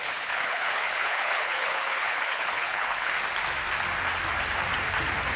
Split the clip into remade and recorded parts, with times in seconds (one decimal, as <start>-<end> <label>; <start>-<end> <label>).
0.0-3.2 remade; 3.2-5.4 recorded